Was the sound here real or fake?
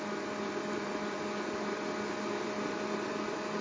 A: real